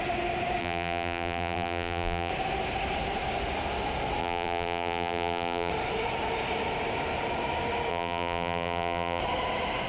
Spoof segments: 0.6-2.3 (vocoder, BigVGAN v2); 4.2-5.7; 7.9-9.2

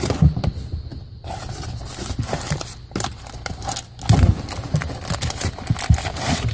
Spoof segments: none

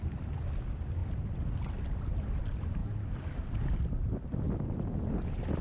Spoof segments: 0.0-2.8 (vocoder, BigVGAN v2)

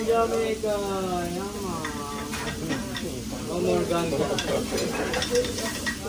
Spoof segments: none

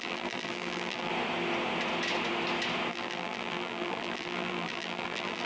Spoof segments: 0.0-1.1 (vocoder, BigVGAN v2); 2.9-5.5

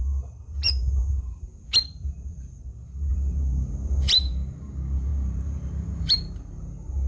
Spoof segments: 0.0-1.5 (vocoder, BigVGAN v2); 2.5-7.1

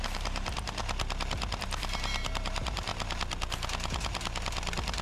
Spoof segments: 0.0-0.8 (vocoder, BigVGAN v2); 1.6-2.9

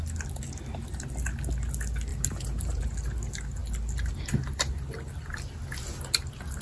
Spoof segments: 2.1-2.8 (vocoder, BigVGAN v2)